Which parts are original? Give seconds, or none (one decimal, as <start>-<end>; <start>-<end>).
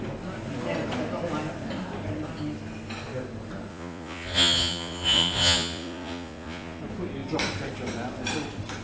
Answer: 0.0-3.7; 6.8-8.8